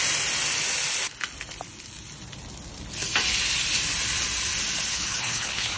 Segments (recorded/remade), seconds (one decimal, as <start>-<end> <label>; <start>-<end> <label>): 0.0-4.9 recorded; 4.9-5.8 remade